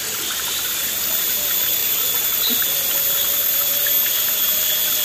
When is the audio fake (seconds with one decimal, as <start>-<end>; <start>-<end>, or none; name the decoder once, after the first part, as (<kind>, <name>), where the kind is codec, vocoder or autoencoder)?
none